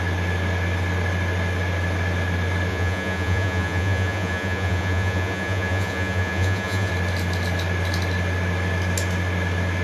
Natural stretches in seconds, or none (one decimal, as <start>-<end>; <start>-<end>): 0.0-2.7; 6.9-9.8